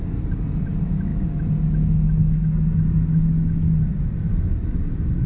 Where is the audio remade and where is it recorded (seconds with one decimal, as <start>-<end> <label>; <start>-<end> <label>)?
0.0-5.3 recorded